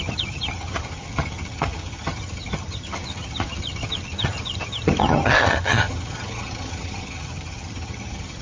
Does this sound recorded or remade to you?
remade